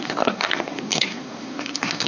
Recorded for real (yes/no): no